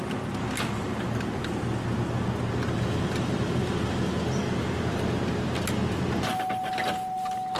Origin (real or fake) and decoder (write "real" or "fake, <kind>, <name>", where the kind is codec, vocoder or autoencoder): real